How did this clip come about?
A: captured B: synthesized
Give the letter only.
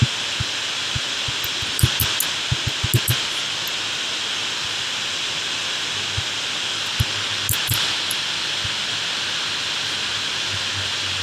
A